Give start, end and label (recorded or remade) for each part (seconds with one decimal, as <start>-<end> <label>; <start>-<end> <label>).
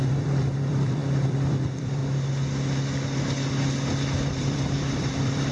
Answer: 0.0-2.0 remade; 2.0-4.3 recorded; 4.3-5.5 remade